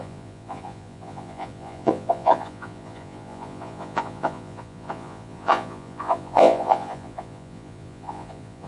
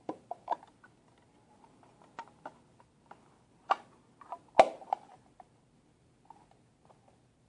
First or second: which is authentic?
second